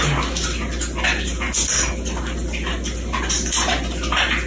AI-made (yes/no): no